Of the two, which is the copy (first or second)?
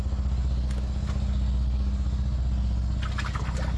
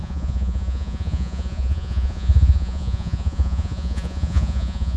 second